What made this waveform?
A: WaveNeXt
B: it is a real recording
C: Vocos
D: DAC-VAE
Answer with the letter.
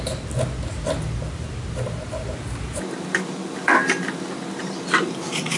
B